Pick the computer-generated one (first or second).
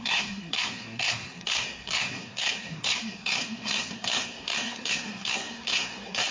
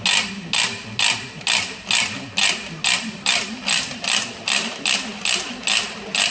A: first